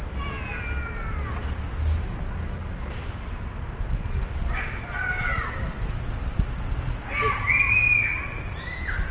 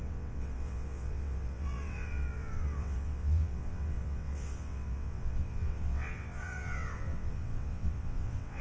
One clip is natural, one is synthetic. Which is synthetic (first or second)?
second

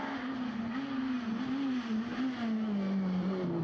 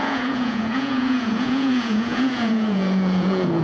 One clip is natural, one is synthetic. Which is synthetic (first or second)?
second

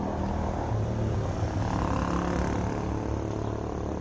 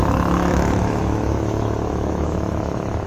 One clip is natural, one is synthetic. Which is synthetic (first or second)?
second